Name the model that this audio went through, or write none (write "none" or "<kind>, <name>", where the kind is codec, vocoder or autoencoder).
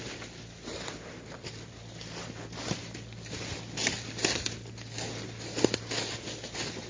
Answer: none